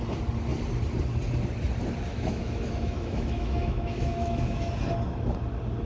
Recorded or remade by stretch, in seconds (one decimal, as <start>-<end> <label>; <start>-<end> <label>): 0.0-2.1 recorded; 2.1-4.7 remade; 4.7-5.9 recorded